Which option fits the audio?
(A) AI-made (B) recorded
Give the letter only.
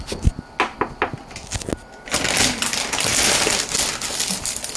B